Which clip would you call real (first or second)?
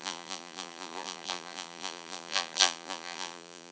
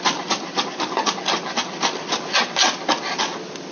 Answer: second